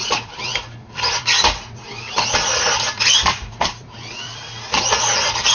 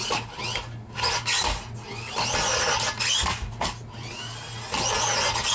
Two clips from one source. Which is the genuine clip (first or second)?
second